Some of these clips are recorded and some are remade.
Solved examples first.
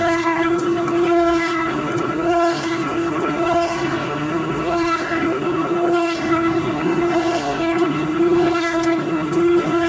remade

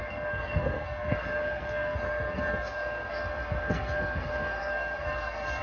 remade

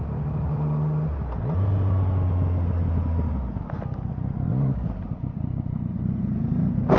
recorded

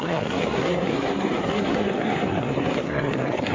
remade